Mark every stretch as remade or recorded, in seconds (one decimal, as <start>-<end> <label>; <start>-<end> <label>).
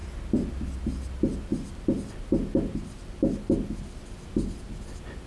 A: 0.0-5.3 recorded